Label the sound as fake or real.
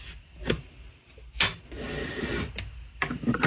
real